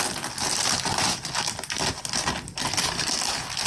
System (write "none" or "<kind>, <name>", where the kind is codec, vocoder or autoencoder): none